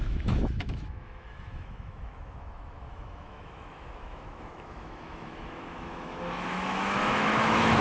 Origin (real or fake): fake